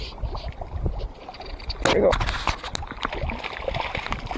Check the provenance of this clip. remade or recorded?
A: recorded